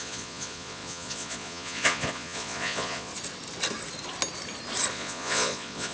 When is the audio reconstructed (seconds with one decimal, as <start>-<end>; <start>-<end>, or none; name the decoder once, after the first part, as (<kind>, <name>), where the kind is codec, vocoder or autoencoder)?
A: 0.0-3.1 (vocoder, Vocos); 4.9-5.9